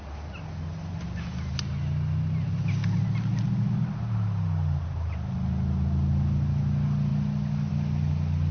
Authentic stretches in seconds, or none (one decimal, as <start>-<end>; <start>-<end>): 0.0-8.5